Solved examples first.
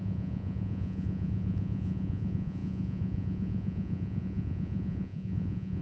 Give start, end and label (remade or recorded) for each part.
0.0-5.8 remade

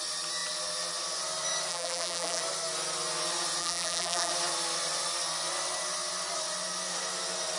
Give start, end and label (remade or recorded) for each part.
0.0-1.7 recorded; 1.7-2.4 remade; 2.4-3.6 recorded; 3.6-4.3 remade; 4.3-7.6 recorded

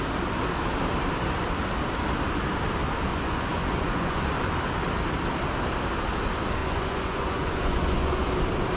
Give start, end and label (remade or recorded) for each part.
0.0-3.1 recorded; 3.1-4.2 remade; 4.2-6.6 recorded; 6.6-8.3 remade; 8.3-8.8 recorded

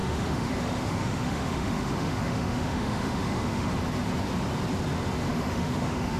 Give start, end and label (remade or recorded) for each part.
0.0-3.7 remade; 3.7-5.3 recorded; 5.3-6.2 remade

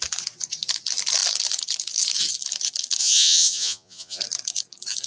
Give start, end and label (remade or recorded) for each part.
0.0-3.0 recorded; 3.0-4.2 remade; 4.2-5.1 recorded

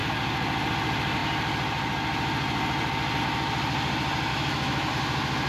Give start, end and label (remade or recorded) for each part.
0.0-4.3 recorded; 4.3-4.9 remade; 4.9-5.5 recorded

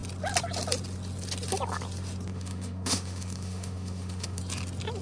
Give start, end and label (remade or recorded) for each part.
0.0-2.3 recorded; 2.3-4.4 remade; 4.4-5.0 recorded

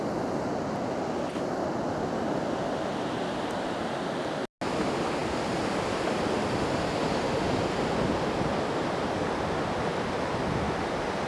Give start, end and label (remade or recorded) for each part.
0.0-11.3 recorded